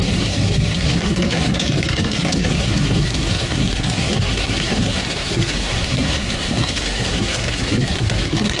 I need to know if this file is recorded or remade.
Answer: remade